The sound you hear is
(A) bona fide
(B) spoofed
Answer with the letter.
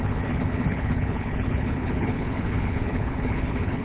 B